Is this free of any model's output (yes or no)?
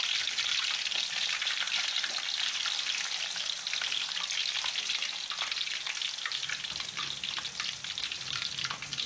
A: yes